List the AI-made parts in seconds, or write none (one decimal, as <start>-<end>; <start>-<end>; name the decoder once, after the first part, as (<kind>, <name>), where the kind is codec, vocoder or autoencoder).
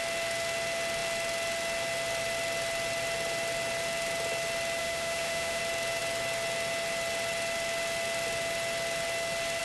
4.8-5.6 (autoencoder, DAC-VAE)